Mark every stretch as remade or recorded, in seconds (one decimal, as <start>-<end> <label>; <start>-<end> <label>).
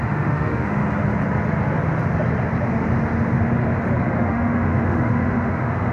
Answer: 0.0-0.8 remade; 0.8-4.2 recorded; 4.2-5.9 remade